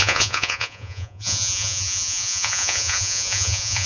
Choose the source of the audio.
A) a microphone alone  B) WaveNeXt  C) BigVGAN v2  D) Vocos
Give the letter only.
D